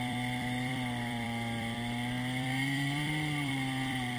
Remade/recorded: remade